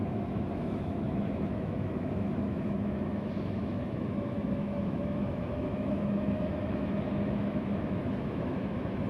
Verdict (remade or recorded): remade